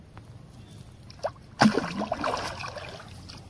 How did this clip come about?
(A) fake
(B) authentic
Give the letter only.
B